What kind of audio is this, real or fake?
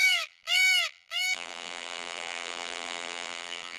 fake